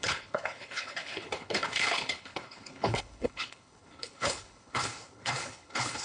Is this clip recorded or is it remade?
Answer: remade